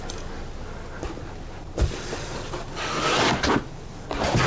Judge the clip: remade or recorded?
recorded